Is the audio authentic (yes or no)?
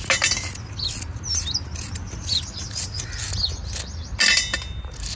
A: yes